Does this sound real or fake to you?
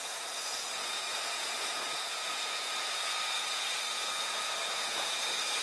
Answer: fake